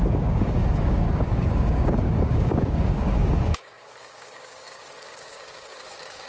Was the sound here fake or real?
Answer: fake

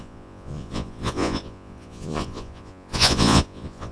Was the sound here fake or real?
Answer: fake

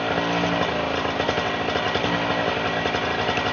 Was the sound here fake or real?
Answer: real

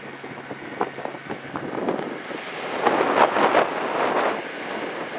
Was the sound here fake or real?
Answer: real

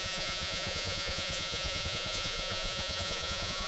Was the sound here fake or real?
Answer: fake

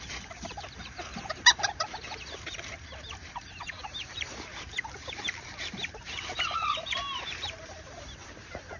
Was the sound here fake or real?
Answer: fake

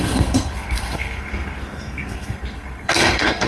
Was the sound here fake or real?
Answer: fake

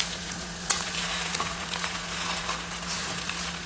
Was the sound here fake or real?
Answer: fake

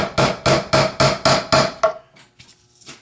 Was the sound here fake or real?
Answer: real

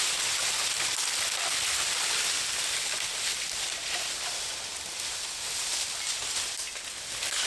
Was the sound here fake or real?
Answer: real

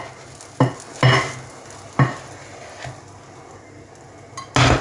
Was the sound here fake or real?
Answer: real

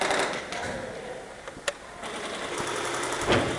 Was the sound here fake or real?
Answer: real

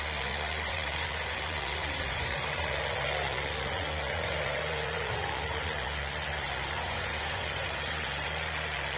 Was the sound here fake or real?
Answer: fake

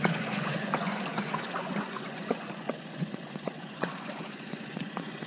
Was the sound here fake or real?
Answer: fake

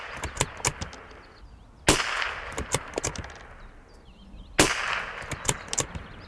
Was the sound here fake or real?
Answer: real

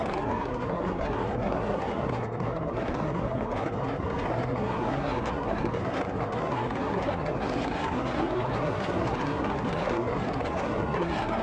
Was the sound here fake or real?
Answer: fake